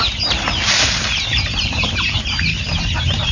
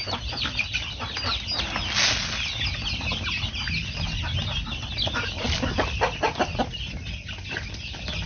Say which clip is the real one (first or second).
second